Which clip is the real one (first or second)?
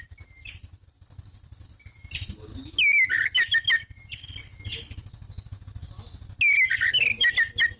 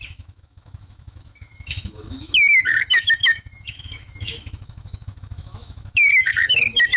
first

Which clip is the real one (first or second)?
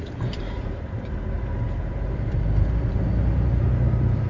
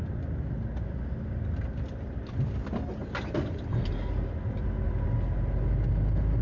second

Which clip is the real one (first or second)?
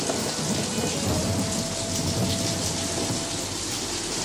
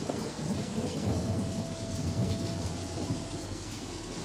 first